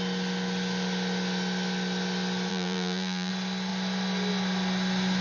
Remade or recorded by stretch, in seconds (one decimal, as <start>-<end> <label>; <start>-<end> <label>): 0.0-2.5 recorded; 2.5-3.3 remade; 3.3-5.2 recorded